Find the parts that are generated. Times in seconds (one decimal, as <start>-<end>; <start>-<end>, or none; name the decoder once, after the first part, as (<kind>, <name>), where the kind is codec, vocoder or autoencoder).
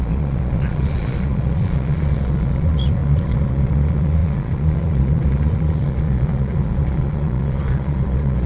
0.0-8.5 (vocoder, Vocos)